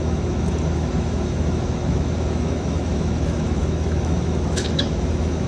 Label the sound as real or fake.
fake